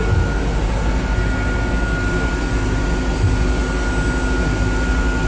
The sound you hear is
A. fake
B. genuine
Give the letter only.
B